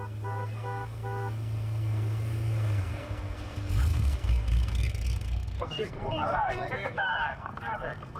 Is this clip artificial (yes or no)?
yes